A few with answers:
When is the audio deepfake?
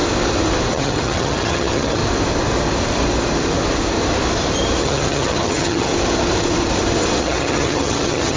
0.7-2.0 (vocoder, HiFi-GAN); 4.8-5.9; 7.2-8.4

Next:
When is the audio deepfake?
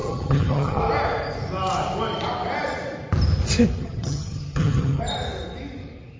0.0-0.8 (vocoder, HiFi-GAN); 3.8-5.0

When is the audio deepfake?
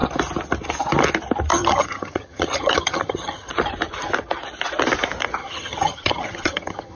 1.5-3.5 (vocoder, HiFi-GAN); 5.4-7.0